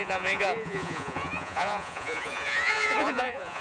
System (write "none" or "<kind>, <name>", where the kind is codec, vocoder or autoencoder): vocoder, Vocos